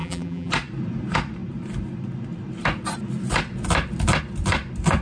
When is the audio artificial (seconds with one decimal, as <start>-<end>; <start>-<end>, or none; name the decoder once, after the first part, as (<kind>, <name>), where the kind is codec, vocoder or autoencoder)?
0.0-0.5 (vocoder, BigVGAN v2)

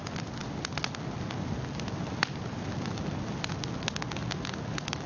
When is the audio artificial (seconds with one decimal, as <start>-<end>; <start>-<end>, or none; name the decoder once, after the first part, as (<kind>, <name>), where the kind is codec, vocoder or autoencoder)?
none

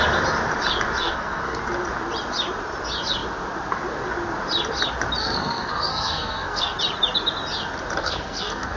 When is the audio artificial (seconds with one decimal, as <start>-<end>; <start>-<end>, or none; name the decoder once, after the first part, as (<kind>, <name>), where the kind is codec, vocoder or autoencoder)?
1.0-1.6 (codec, SNAC); 5.2-6.8; 8.0-8.8